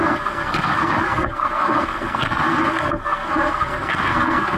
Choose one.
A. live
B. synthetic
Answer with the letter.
B